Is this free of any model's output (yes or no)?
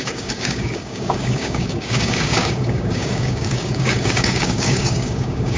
no